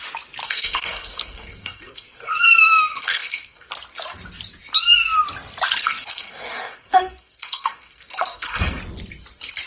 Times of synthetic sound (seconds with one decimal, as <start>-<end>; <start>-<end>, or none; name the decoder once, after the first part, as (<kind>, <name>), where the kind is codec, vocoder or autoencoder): 0.4-3.7 (codec, SNAC); 5.8-8.8